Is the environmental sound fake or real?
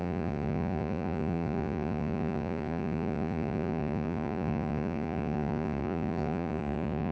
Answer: fake